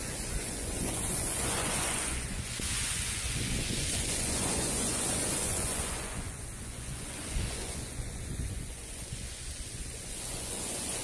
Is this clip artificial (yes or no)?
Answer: yes